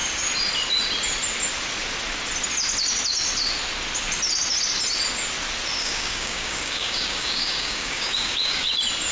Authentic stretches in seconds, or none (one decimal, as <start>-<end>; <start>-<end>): 0.0-5.8; 8.7-9.1